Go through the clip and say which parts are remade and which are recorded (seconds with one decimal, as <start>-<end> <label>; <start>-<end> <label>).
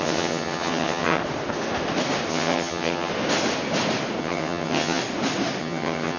0.0-1.2 remade; 1.2-2.3 recorded; 2.3-3.1 remade; 3.1-4.2 recorded; 4.2-5.0 remade; 5.0-5.6 recorded; 5.6-6.2 remade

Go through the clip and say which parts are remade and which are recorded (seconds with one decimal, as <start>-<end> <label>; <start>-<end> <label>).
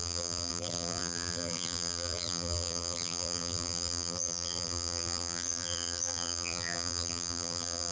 0.0-7.9 remade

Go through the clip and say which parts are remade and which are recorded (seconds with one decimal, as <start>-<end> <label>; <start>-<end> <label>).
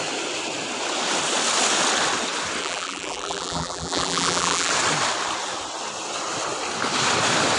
0.0-2.6 recorded; 2.6-4.7 remade; 4.7-7.6 recorded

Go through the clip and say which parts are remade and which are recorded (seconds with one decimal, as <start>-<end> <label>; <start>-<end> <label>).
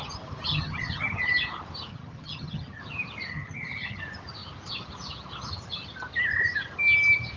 0.0-0.5 recorded; 0.5-1.2 remade; 1.2-1.9 recorded; 1.9-2.8 remade; 2.8-3.3 recorded; 3.3-4.0 remade; 4.0-7.4 recorded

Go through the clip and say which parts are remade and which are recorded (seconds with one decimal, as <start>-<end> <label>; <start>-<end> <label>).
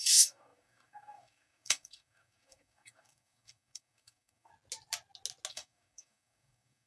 0.0-4.5 remade; 4.5-5.5 recorded; 5.5-6.9 remade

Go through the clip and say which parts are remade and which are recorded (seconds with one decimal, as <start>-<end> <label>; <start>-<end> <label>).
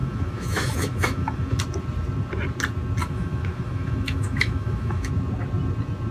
0.0-1.6 remade; 1.6-3.0 recorded; 3.0-5.1 remade; 5.1-6.1 recorded